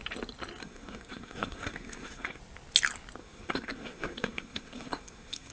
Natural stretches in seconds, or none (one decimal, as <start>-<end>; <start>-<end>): 0.0-0.6; 2.4-3.2